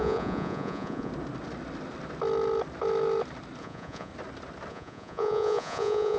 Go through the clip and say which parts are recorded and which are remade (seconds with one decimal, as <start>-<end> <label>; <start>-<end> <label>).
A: 0.0-1.1 remade; 1.1-3.6 recorded; 3.6-4.1 remade; 4.1-4.7 recorded; 4.7-6.2 remade